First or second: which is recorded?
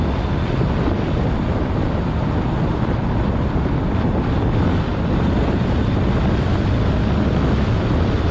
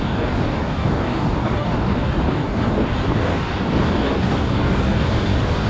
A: first